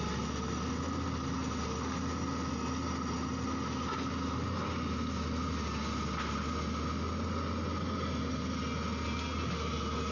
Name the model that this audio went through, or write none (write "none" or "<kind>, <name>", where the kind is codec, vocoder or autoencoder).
none